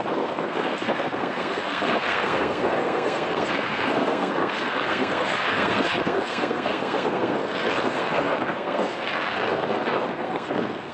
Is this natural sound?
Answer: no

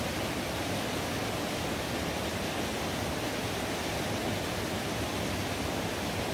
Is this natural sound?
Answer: yes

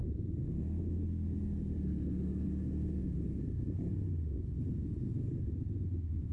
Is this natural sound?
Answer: yes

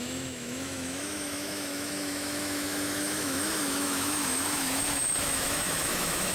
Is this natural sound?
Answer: no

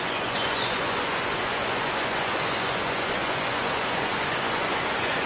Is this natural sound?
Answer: no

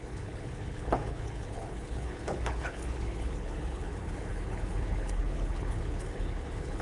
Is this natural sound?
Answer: no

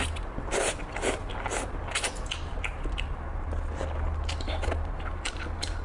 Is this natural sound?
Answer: yes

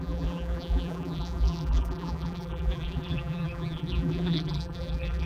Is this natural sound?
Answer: no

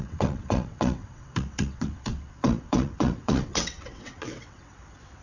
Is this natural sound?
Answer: no